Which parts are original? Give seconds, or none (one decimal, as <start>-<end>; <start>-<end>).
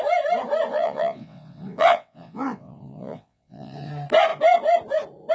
0.0-0.7; 3.9-5.3